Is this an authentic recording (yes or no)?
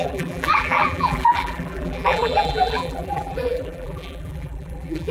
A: no